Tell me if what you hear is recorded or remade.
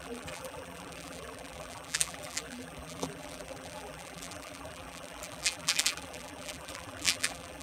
remade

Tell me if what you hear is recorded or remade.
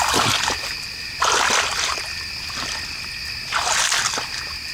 recorded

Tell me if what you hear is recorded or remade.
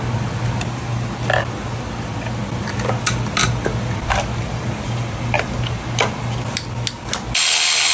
recorded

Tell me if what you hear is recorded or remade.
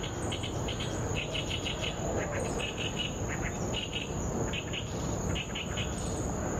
recorded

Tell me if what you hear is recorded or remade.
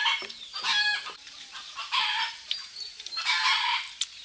remade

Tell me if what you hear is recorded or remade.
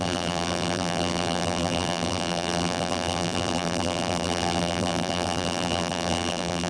remade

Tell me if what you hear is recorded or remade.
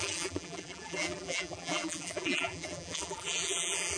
remade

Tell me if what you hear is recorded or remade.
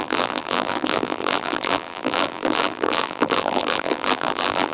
remade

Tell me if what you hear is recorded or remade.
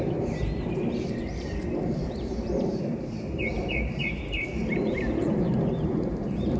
remade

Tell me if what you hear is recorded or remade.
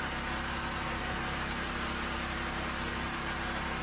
remade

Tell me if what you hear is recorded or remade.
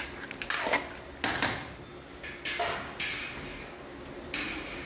recorded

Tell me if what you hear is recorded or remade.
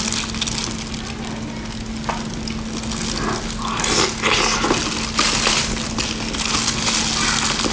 recorded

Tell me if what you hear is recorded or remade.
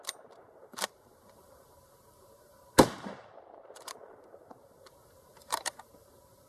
remade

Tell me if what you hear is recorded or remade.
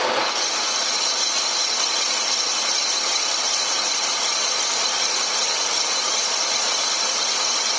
remade